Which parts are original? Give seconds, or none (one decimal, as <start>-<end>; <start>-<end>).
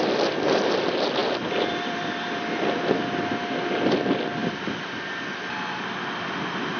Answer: 0.0-1.2; 2.9-4.4; 5.9-6.8